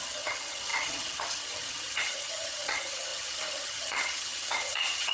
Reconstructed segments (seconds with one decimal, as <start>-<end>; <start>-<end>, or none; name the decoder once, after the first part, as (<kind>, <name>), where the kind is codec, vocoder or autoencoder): 0.0-5.1 (vocoder, HiFi-GAN)